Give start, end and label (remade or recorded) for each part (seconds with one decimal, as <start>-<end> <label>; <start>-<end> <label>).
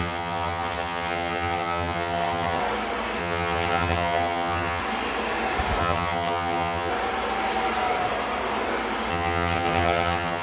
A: 0.0-2.6 remade; 2.6-3.2 recorded; 3.2-4.8 remade; 4.8-5.8 recorded; 5.8-6.9 remade; 6.9-9.1 recorded; 9.1-10.4 remade